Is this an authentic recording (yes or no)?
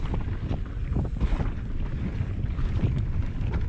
yes